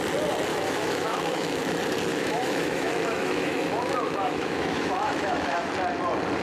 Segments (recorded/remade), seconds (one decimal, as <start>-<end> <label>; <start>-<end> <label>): 0.0-0.5 recorded; 0.5-1.6 remade; 1.6-2.1 recorded; 2.1-5.7 remade; 5.7-6.4 recorded